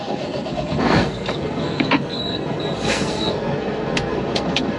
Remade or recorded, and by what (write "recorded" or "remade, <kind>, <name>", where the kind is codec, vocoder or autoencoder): remade, codec, SNAC